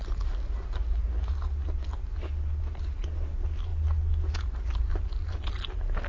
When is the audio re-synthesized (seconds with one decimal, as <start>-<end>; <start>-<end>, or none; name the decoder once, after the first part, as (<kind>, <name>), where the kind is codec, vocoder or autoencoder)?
none